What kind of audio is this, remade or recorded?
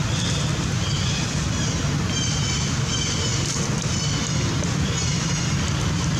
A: recorded